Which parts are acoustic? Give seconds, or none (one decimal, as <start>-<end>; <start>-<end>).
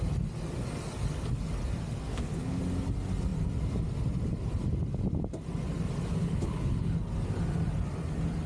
0.0-2.1; 2.6-6.1; 7.0-8.5